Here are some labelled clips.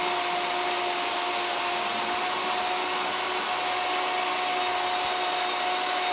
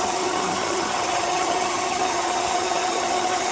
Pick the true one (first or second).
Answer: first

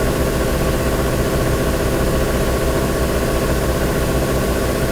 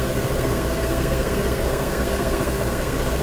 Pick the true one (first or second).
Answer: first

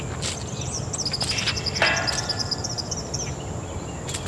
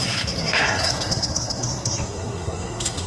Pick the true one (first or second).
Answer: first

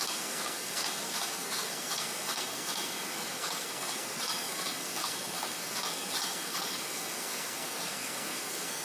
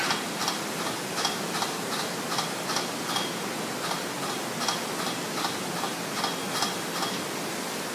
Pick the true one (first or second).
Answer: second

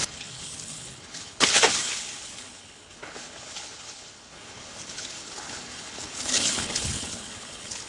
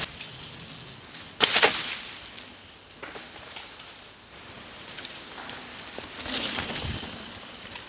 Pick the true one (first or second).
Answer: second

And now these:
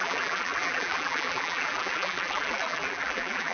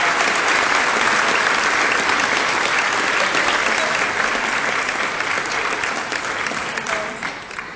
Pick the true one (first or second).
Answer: second